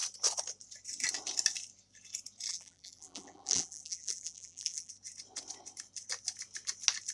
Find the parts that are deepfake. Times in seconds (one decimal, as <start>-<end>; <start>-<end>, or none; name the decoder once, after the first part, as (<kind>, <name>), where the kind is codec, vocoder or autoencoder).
2.5-4.9 (vocoder, BigVGAN v2)